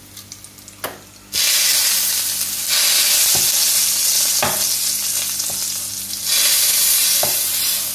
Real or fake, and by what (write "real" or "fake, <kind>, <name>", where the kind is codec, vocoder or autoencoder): real